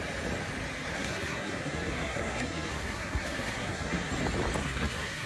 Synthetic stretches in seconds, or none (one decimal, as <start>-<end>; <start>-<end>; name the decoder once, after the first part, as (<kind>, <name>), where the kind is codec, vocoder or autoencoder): 0.9-4.1 (codec, SNAC); 4.6-5.3